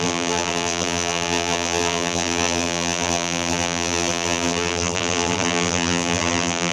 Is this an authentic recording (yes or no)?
no